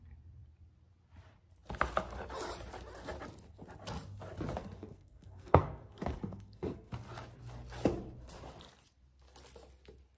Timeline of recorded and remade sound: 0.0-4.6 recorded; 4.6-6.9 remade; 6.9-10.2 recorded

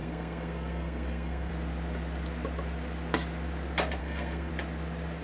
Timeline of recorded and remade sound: 0.0-1.5 remade; 1.5-4.0 recorded; 4.0-4.5 remade; 4.5-5.2 recorded

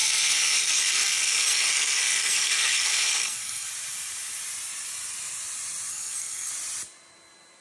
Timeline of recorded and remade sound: 0.0-3.7 remade; 3.7-5.9 recorded; 5.9-6.5 remade; 6.5-7.6 recorded